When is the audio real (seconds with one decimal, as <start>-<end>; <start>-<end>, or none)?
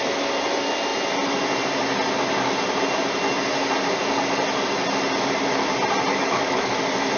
0.0-6.1; 6.8-7.2